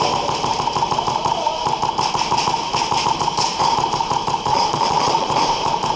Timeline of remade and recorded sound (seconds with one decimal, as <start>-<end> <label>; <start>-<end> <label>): 0.0-4.5 recorded; 4.5-5.3 remade; 5.3-6.0 recorded